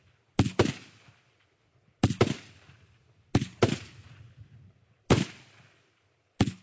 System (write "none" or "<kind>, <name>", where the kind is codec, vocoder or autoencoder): none